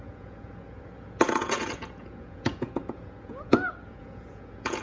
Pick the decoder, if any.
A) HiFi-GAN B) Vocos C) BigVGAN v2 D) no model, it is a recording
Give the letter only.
B